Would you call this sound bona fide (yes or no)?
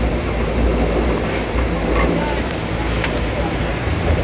no